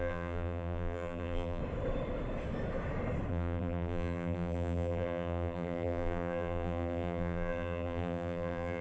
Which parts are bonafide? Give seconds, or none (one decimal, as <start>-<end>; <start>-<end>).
1.6-3.3

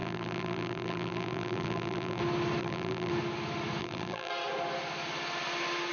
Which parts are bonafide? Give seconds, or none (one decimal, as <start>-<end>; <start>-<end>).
2.2-2.6; 3.1-3.8; 4.3-5.9

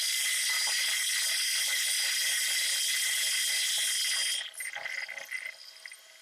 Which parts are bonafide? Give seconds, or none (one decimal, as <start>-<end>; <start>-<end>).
0.0-1.7; 3.3-6.2

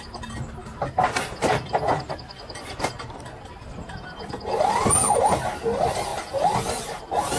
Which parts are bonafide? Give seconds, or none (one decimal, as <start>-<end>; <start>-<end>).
0.0-7.4

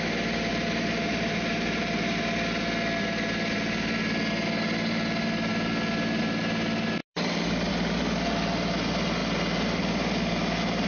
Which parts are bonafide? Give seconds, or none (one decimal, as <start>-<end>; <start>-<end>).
0.0-0.5; 2.2-10.9

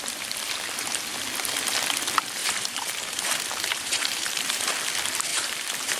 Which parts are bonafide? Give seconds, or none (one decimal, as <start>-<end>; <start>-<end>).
0.0-2.4; 4.7-5.3

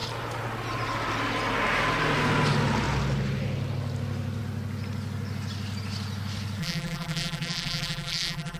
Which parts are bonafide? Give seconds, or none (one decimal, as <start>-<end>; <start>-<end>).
0.0-6.6